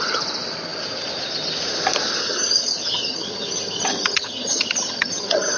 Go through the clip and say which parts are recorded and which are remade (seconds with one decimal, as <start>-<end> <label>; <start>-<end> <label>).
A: 0.0-2.2 recorded; 2.2-5.6 remade